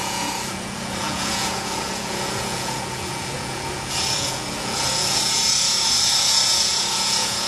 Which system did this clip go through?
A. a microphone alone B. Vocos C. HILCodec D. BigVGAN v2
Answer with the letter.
B